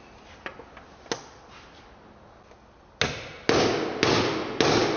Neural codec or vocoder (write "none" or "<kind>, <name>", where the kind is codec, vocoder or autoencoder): none